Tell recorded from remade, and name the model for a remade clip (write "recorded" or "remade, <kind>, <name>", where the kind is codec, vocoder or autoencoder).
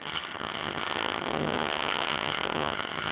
remade, vocoder, HiFi-GAN